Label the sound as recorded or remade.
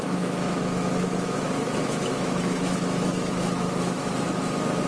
remade